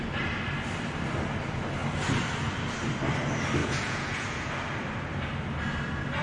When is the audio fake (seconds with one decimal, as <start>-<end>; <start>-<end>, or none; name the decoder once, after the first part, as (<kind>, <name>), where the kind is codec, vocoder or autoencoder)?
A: 3.6-4.5 (vocoder, Vocos)